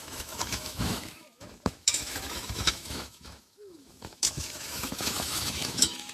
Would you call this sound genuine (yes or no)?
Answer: no